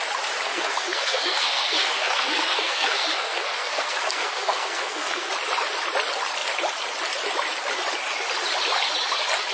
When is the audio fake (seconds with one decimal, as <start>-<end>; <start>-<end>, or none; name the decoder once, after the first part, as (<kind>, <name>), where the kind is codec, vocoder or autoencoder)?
0.5-5.3 (codec, SNAC)